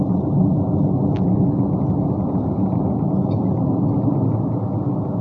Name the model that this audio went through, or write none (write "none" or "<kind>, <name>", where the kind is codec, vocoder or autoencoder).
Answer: none